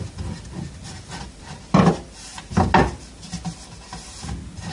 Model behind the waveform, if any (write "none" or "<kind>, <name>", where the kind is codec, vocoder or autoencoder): none